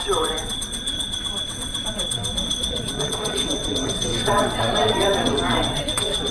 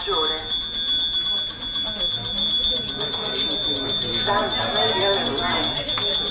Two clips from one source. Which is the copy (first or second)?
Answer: first